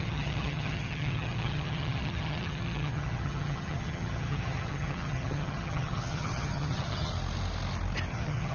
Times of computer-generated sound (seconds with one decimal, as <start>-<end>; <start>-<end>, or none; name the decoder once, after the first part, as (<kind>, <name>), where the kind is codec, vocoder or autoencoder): 0.0-7.1 (vocoder, HiFi-GAN); 8.1-8.5